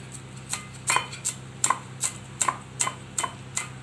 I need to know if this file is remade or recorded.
recorded